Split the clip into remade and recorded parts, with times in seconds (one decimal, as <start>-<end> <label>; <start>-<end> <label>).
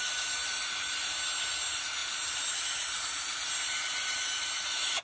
0.0-5.0 recorded